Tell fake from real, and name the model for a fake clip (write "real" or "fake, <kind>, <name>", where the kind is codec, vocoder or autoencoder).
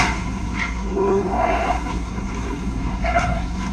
fake, codec, SNAC